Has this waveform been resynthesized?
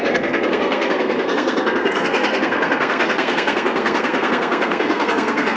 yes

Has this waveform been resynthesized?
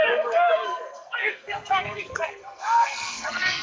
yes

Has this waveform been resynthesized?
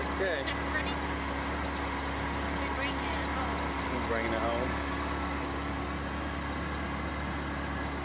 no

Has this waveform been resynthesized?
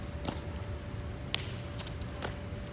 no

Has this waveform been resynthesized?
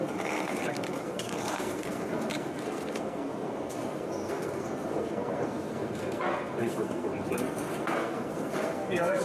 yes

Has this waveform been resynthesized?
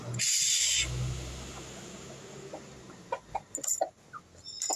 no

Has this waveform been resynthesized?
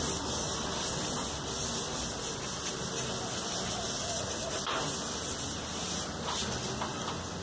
no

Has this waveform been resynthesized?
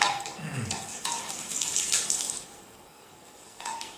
yes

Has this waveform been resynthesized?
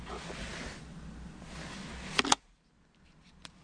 no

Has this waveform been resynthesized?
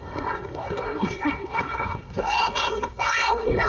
yes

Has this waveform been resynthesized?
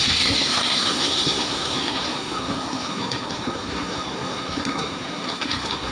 yes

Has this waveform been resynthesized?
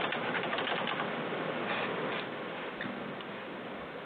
no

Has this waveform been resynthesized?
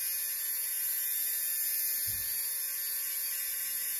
no